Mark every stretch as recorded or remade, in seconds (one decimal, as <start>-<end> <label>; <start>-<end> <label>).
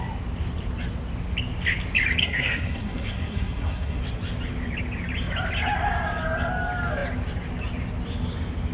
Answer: 0.0-2.2 recorded; 2.2-4.0 remade; 4.0-8.7 recorded